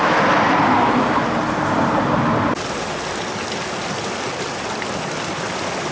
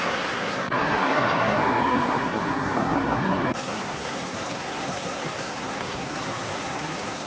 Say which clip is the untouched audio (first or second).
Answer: first